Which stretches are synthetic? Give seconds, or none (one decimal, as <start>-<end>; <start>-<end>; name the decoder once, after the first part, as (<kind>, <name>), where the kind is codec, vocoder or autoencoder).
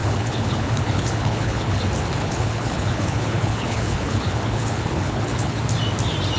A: 0.0-1.8 (codec, HILCodec); 2.2-5.6